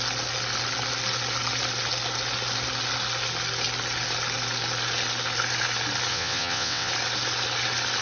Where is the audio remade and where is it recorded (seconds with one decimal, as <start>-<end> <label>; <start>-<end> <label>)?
0.0-6.1 recorded; 6.1-6.9 remade; 6.9-8.0 recorded